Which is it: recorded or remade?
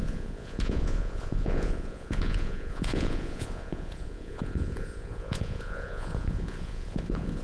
remade